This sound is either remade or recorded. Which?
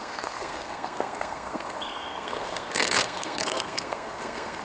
remade